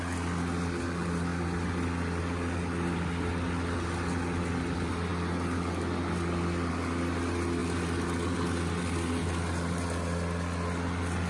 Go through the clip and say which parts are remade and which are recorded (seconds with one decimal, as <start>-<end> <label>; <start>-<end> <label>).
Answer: 0.0-11.3 recorded